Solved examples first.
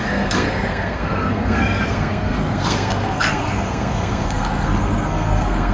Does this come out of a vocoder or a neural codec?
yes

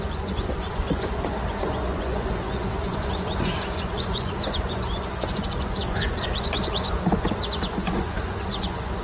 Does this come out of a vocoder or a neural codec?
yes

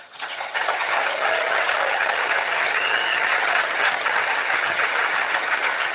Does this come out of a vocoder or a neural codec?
yes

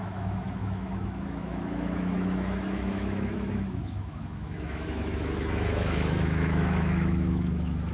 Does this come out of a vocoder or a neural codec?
yes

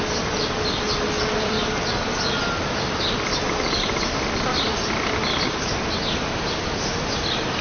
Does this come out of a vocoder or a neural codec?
no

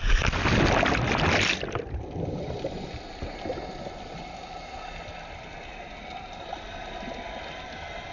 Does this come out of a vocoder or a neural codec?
no